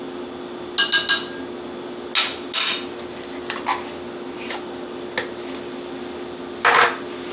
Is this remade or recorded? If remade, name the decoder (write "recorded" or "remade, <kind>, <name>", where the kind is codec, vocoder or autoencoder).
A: recorded